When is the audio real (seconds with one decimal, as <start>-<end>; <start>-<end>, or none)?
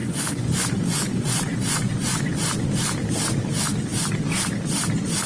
2.3-5.3